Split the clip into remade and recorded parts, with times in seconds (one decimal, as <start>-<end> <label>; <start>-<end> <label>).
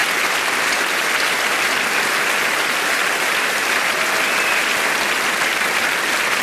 0.0-6.4 recorded